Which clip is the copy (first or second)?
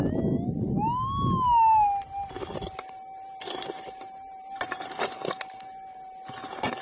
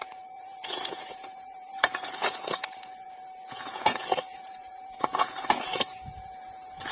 second